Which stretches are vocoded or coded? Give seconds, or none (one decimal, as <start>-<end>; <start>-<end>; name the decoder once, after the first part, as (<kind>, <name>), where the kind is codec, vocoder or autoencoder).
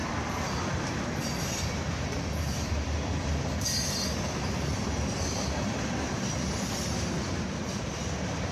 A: 0.0-8.5 (vocoder, BigVGAN v2)